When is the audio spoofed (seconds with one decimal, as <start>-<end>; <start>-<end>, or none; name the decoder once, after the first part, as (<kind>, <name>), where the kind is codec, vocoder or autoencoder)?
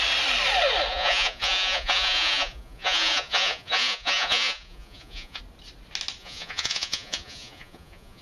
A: 0.9-5.4 (vocoder, Vocos); 6.2-8.2